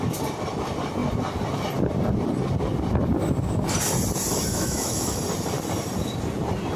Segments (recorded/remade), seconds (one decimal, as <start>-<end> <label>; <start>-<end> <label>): 0.0-4.5 recorded; 4.5-5.2 remade; 5.2-6.8 recorded